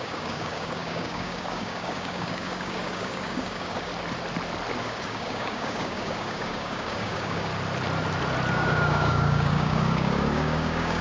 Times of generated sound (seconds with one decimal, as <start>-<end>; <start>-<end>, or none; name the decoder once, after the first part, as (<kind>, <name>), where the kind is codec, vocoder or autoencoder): 0.0-3.9 (codec, DAC); 4.8-7.5; 8.5-11.0